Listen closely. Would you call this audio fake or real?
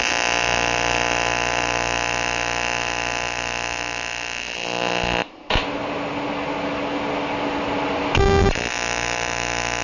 real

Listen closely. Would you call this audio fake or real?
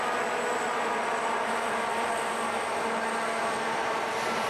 real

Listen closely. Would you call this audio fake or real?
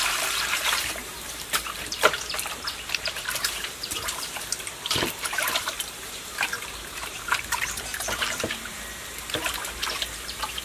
fake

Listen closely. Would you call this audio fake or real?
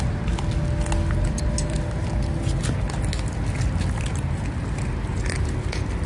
real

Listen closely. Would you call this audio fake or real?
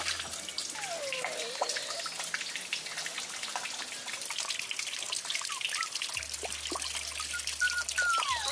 real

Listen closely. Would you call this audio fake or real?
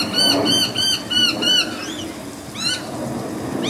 real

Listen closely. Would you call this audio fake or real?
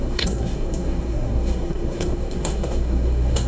fake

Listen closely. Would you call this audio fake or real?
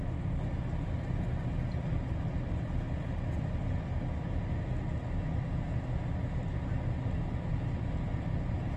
real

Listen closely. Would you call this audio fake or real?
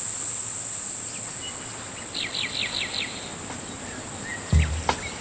real